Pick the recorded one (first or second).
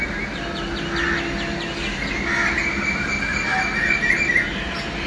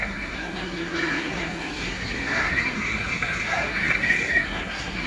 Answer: first